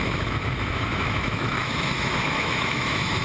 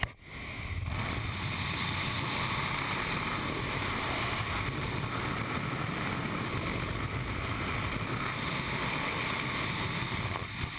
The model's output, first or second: first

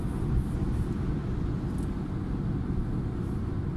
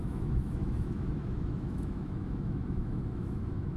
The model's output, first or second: second